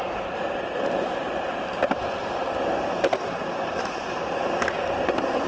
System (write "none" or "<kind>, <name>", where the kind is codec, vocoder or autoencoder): vocoder, BigVGAN v2